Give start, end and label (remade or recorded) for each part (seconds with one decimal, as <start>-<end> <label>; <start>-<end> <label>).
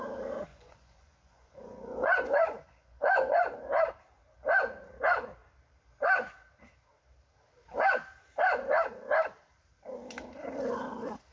0.0-0.5 recorded; 0.5-3.6 remade; 3.6-11.3 recorded